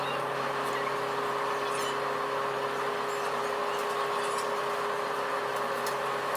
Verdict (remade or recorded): recorded